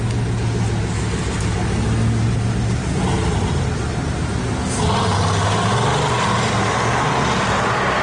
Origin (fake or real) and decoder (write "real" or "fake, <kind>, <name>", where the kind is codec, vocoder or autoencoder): real